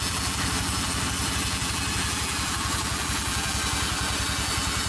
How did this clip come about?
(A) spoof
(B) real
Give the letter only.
A